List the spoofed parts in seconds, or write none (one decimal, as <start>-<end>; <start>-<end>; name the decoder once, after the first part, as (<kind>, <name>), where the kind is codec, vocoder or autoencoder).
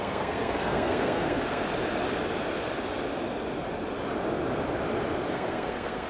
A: 0.0-1.6 (codec, SNAC); 5.3-6.1